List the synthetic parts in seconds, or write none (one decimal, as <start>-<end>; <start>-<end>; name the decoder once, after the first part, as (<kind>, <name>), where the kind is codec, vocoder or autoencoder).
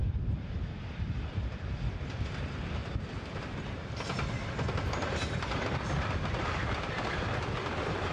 none